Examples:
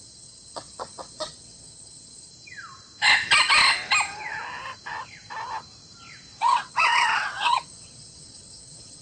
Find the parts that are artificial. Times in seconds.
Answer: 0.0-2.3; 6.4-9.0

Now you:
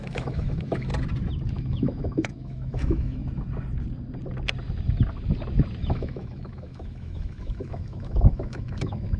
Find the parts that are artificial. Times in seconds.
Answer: 0.0-0.9; 1.6-3.2; 5.8-9.2

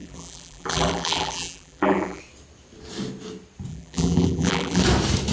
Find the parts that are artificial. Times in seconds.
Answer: 0.0-2.2; 3.7-4.8

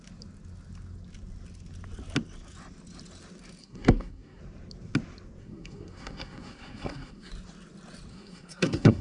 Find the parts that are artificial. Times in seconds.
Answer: 3.6-4.4; 5.4-7.3; 8.1-9.0

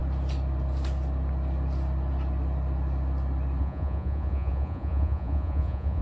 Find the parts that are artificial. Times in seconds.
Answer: 3.6-6.0